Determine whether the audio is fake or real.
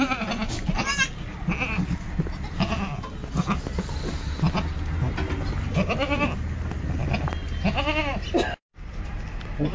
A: real